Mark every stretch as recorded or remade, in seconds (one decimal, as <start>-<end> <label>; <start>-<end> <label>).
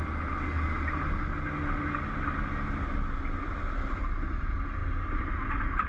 0.0-5.9 recorded